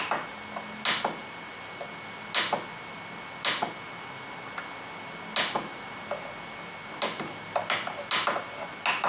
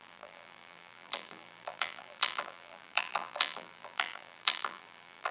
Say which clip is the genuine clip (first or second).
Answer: first